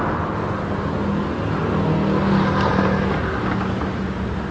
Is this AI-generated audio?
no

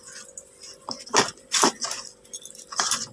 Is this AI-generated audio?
no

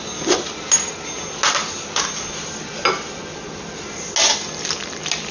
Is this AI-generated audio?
no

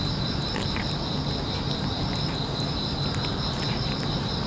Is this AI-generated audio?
no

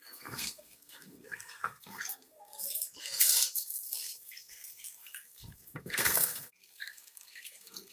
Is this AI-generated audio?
yes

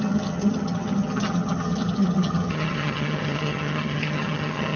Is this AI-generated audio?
yes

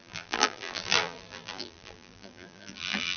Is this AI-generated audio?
yes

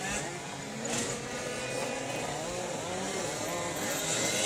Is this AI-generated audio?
no